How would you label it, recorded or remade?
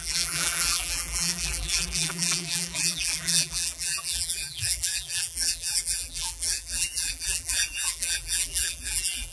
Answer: remade